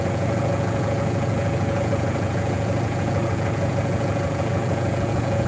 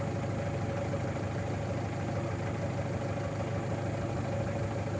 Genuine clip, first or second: second